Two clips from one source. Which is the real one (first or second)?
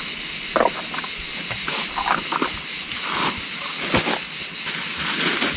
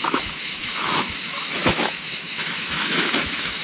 first